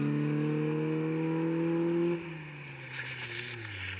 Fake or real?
real